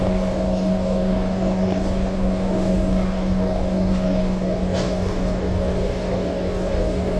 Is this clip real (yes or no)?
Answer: no